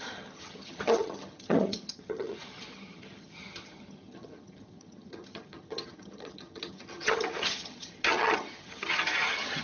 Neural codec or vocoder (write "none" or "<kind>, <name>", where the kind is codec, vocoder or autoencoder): vocoder, HiFi-GAN